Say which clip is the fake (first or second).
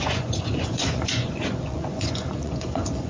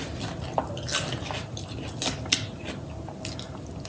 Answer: first